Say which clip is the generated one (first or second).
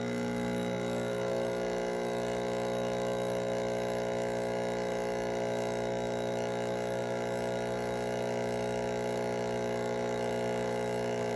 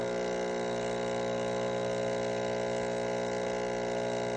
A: first